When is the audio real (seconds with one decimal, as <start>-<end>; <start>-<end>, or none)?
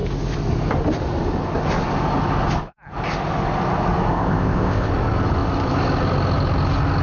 0.0-4.1; 4.9-7.0